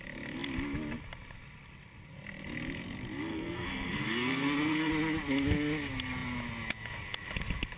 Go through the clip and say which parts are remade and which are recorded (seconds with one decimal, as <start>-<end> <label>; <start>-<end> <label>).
0.0-3.3 recorded; 3.3-4.9 remade; 4.9-7.8 recorded